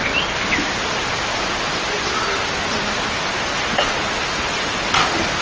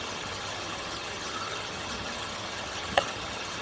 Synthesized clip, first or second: second